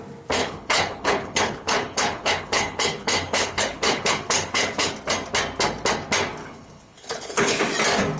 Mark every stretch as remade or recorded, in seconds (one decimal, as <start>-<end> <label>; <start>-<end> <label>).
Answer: 0.0-0.4 recorded; 0.4-4.9 remade; 4.9-6.4 recorded; 6.4-7.6 remade; 7.6-8.2 recorded